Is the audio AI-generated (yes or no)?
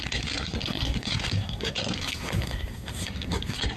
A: yes